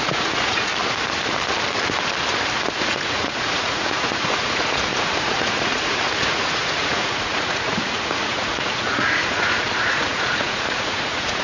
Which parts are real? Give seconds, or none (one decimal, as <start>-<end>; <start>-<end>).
0.7-2.7